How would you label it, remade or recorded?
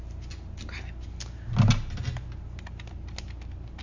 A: recorded